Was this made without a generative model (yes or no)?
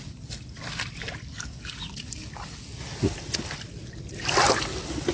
yes